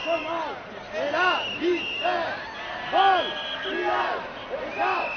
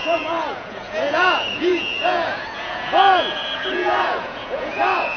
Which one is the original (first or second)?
first